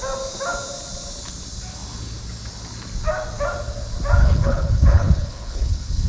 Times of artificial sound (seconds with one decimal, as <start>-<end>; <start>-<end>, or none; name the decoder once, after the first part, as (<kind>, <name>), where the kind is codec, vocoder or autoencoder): 4.2-6.1 (codec, HILCodec)